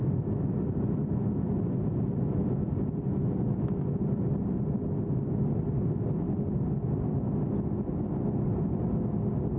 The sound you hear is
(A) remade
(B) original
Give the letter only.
B